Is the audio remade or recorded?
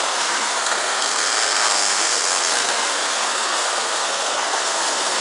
remade